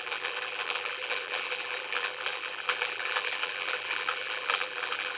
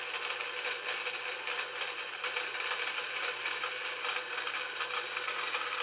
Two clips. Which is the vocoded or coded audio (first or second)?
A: first